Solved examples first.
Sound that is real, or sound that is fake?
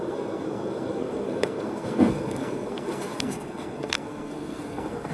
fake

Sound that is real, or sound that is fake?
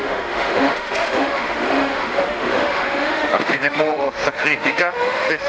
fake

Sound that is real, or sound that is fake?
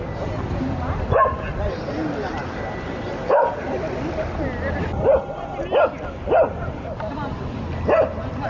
real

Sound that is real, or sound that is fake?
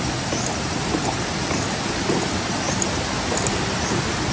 real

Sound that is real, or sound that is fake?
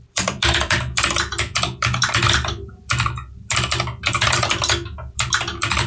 fake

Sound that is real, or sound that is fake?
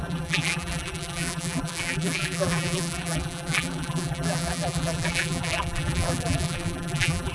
fake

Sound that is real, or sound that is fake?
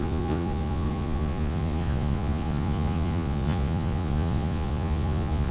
fake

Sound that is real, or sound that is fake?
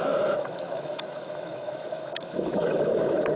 fake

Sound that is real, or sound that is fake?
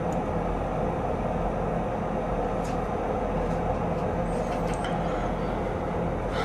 real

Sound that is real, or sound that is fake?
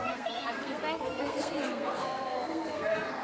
fake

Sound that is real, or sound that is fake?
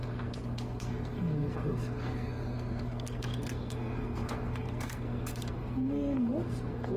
fake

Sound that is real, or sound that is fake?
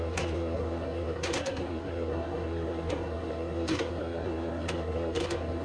fake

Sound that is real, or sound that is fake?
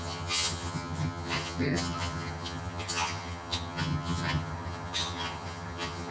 fake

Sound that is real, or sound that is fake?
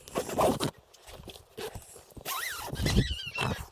fake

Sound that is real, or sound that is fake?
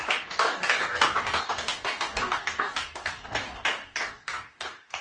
fake